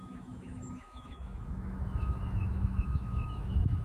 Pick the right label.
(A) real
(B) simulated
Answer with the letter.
B